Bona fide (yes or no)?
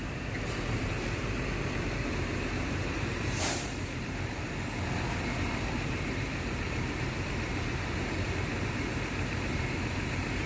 no